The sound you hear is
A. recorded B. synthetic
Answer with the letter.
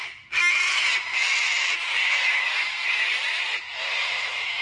A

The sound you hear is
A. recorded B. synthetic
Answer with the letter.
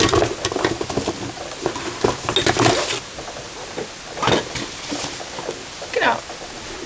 A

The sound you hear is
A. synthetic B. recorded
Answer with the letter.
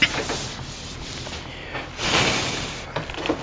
B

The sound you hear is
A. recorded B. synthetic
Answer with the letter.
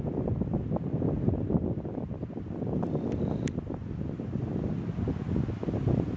A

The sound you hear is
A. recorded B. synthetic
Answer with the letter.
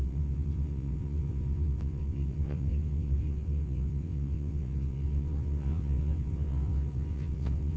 B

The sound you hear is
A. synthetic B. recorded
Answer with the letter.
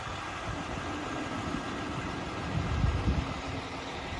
B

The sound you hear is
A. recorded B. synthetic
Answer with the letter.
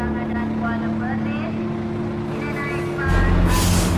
A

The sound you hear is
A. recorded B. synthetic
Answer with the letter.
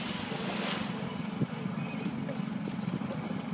A